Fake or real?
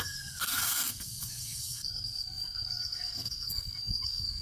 fake